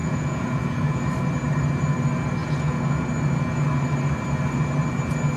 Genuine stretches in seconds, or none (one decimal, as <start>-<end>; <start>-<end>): 1.0-2.4; 3.0-5.4